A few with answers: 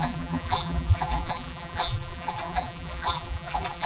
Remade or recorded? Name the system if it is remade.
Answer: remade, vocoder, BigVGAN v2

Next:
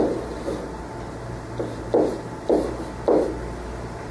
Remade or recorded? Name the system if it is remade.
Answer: recorded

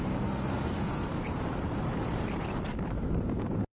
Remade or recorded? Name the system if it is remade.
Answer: remade, vocoder, BigVGAN v2